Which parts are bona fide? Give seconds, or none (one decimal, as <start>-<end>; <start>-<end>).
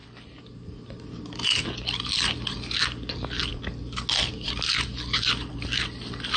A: 0.0-6.4